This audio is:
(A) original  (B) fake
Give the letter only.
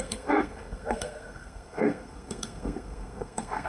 B